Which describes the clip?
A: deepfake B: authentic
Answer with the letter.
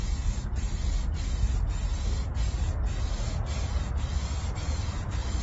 A